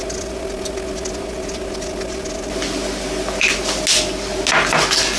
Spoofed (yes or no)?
no